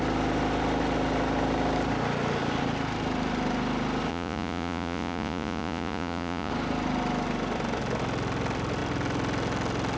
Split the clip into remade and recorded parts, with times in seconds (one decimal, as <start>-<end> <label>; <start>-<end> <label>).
0.0-4.1 recorded; 4.1-6.5 remade; 6.5-10.0 recorded